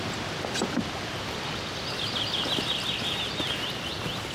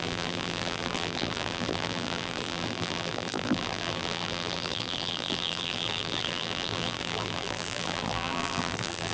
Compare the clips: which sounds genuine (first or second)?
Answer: first